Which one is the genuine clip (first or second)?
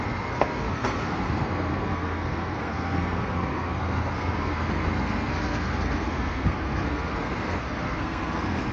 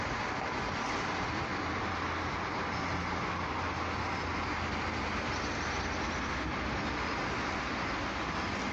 second